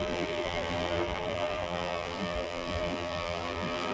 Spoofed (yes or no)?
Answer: yes